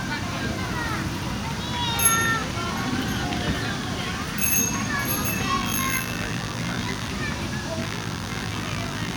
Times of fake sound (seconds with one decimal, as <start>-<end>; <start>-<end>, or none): 5.6-7.1; 7.8-9.2